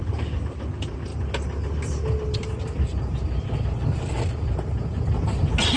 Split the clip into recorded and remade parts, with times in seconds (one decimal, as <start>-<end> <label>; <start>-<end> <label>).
0.0-5.8 recorded

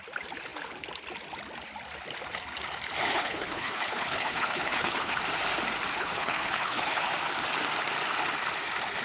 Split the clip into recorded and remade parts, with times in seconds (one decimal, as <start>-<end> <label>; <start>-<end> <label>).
0.0-3.1 recorded; 3.1-5.2 remade; 5.2-5.9 recorded; 5.9-7.1 remade; 7.1-9.0 recorded